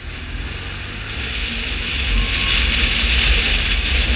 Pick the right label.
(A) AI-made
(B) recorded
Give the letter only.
B